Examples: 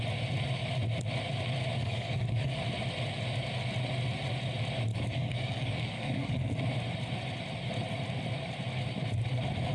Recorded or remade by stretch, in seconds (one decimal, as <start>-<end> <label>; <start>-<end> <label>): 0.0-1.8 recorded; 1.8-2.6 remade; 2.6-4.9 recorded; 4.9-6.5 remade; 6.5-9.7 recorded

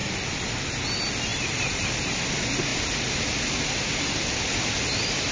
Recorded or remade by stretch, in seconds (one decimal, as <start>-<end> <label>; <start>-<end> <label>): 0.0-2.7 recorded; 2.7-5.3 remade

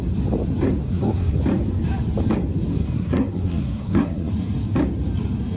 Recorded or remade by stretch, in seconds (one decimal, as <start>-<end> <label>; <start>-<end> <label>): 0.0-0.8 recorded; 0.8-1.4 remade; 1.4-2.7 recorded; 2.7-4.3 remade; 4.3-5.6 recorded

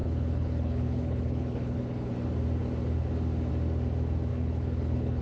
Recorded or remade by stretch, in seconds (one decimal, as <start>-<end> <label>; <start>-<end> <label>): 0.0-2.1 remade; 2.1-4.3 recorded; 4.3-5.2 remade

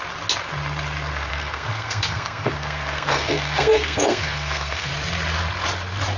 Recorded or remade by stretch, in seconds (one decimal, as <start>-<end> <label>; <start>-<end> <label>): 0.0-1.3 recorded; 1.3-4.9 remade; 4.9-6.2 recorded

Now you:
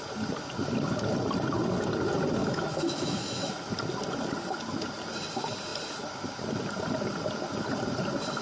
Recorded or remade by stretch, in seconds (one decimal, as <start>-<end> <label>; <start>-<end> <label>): 0.0-2.4 recorded; 2.4-3.7 remade; 3.7-8.4 recorded

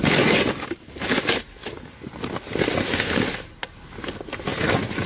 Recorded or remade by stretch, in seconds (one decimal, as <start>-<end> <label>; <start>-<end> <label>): 0.0-5.1 recorded

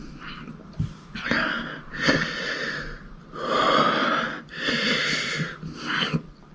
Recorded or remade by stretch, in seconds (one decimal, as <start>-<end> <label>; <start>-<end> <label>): 0.0-4.0 recorded; 4.0-4.6 remade; 4.6-6.5 recorded